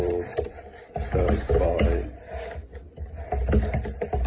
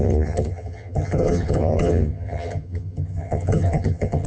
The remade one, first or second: second